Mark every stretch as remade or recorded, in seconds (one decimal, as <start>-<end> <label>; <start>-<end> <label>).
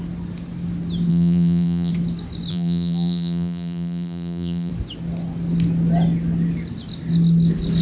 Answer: 0.0-1.1 recorded; 1.1-1.9 remade; 1.9-2.5 recorded; 2.5-4.7 remade; 4.7-7.8 recorded